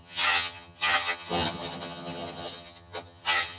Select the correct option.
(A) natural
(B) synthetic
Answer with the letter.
B